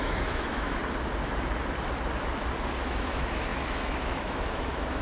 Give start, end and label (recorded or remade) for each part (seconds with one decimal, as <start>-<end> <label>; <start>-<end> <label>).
0.0-0.8 remade; 0.8-2.8 recorded; 2.8-5.0 remade